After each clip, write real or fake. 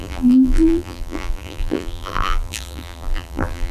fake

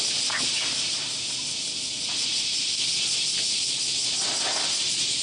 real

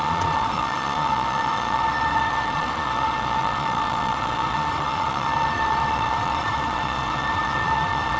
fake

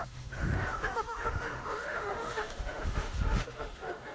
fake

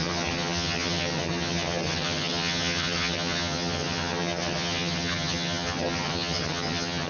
fake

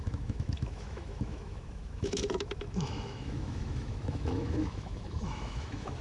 fake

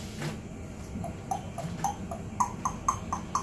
real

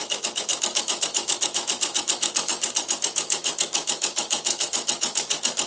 fake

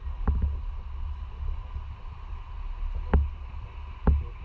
real